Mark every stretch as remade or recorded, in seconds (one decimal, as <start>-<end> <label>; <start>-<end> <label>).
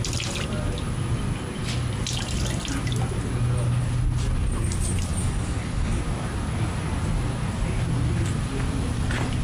0.0-5.2 recorded; 5.2-6.0 remade; 6.0-9.4 recorded